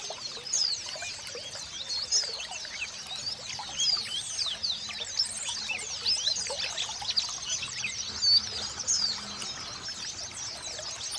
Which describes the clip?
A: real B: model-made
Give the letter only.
A